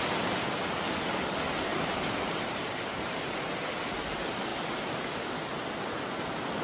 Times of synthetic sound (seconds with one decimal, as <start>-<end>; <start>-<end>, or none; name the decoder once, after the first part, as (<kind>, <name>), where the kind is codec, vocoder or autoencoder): 1.7-3.6 (vocoder, BigVGAN v2)